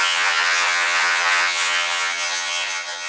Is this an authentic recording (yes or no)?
no